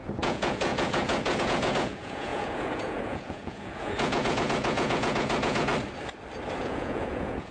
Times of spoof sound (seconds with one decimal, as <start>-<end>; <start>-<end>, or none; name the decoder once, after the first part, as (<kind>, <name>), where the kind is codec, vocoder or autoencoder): 0.0-5.7 (vocoder, Vocos); 6.6-7.5